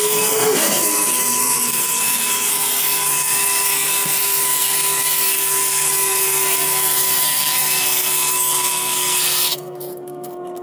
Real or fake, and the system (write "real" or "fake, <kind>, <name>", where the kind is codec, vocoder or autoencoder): fake, codec, SNAC